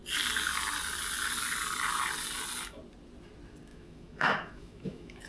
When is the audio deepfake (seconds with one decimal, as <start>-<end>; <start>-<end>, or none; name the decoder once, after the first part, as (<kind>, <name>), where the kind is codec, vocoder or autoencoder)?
3.7-5.3 (autoencoder, DAC-VAE)